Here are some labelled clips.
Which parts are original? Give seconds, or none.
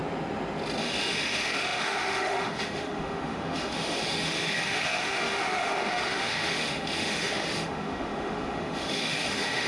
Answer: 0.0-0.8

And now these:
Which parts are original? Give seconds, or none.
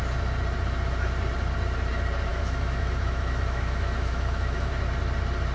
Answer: 0.0-2.3; 4.7-5.5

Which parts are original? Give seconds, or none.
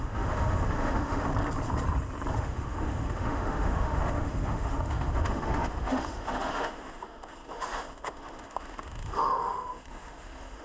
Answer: 1.3-2.3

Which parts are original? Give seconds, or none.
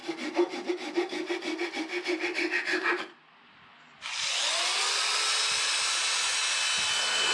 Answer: 0.0-7.3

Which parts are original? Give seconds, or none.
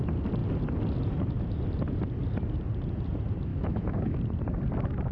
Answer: 0.0-3.5; 4.2-5.1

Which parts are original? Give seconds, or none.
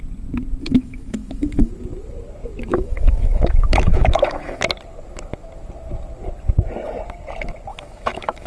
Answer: 0.0-0.6; 1.7-2.7; 4.6-7.7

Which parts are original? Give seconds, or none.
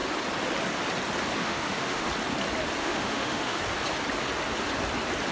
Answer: 0.0-1.4; 2.1-2.8; 3.6-5.3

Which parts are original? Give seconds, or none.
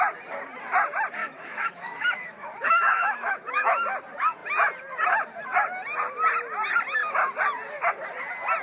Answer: 0.0-1.2; 3.8-8.6